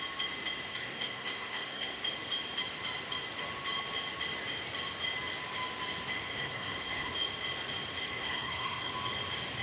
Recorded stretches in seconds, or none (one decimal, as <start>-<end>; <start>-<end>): 0.0-0.7; 2.0-6.3; 7.1-8.0; 8.9-9.6